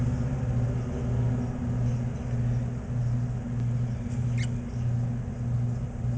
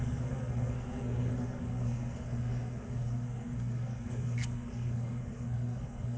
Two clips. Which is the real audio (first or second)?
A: first